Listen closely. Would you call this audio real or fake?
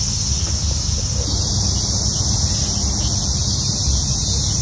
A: real